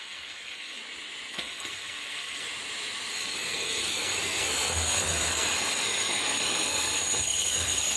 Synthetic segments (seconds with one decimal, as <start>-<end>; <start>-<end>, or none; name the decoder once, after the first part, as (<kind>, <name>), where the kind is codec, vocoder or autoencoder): 0.0-0.8 (codec, SNAC); 1.3-2.5; 3.1-8.0